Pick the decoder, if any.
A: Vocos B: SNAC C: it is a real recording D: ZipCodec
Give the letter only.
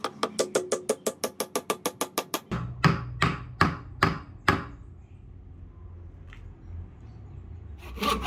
C